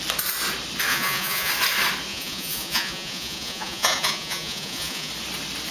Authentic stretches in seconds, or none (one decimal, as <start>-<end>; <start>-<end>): 0.0-0.9; 1.5-2.1; 5.1-5.7

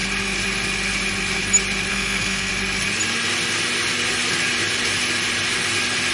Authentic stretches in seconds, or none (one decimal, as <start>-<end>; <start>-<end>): 0.0-1.9; 2.5-6.1

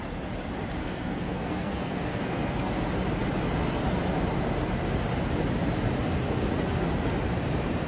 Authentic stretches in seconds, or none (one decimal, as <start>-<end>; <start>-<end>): 0.0-0.8; 2.7-7.9

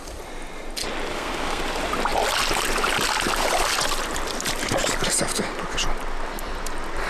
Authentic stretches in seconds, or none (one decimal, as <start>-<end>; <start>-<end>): 0.0-1.1; 1.6-7.1

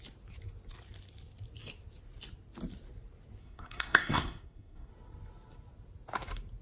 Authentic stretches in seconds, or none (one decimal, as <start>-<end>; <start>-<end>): 0.0-3.4; 4.9-6.6

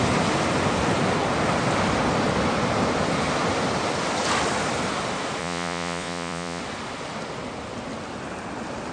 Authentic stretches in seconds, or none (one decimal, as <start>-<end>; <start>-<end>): 0.0-5.4; 6.6-8.9

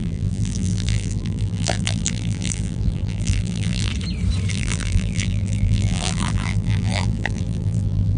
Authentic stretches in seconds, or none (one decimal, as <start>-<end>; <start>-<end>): 3.9-4.5